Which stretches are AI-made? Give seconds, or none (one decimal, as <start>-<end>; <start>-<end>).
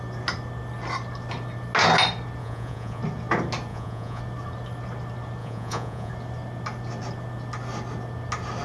2.4-3.0; 3.7-4.2; 5.4-6.1